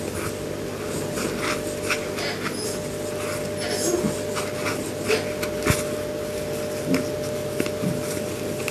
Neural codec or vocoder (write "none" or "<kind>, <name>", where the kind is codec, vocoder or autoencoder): none